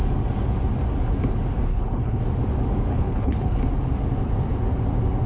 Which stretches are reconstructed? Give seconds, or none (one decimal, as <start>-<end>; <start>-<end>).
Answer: 1.7-2.2; 2.9-3.6